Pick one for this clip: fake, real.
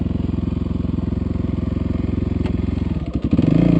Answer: real